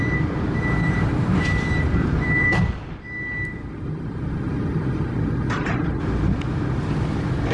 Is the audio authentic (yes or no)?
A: no